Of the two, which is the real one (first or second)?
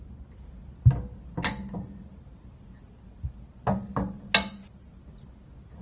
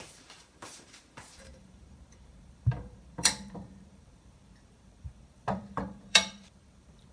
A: first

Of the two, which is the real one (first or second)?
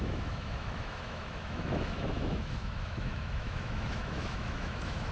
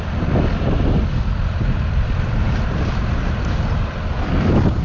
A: second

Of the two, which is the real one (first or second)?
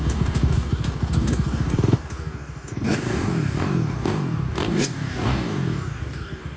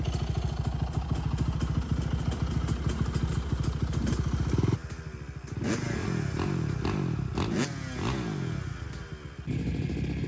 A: second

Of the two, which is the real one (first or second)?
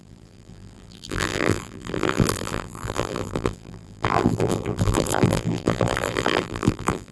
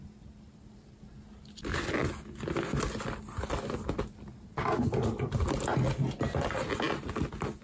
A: second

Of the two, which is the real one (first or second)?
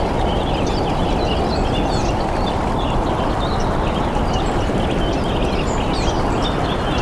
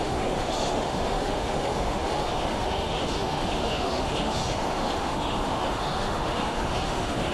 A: first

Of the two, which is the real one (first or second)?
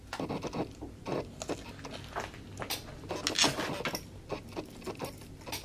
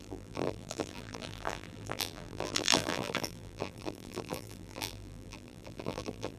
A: first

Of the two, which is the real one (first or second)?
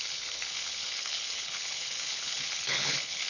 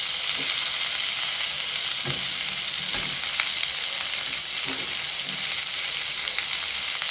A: second